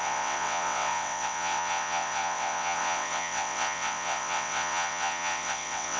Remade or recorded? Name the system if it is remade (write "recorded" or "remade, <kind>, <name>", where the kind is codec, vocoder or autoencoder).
remade, vocoder, WaveNeXt